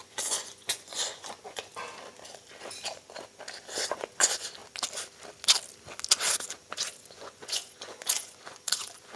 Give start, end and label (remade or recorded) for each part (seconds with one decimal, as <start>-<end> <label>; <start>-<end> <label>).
0.0-1.7 remade; 1.7-3.8 recorded; 3.8-4.6 remade; 4.6-6.7 recorded; 6.7-9.2 remade